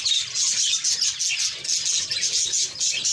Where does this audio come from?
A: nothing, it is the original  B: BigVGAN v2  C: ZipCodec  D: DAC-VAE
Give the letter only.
A